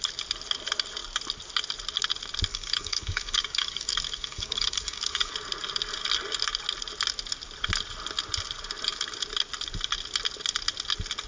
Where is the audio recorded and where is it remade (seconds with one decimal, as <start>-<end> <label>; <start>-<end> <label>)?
0.0-2.5 recorded; 2.5-5.3 remade; 5.3-11.3 recorded